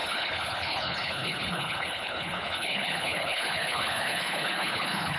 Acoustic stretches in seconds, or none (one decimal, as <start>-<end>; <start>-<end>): none

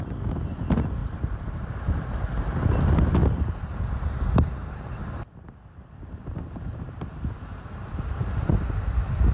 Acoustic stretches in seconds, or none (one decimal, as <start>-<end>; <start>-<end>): 0.0-1.0; 1.7-3.2; 3.8-4.6; 5.2-6.7; 8.5-9.3

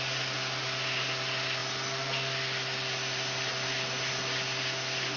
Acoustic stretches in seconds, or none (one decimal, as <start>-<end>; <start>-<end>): 0.0-5.2

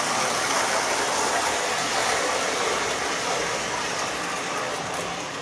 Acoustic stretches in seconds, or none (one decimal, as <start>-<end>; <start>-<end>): 0.0-5.4

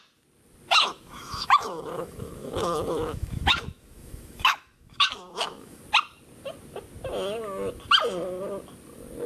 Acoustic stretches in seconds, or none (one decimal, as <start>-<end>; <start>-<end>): 0.0-0.7; 5.8-9.3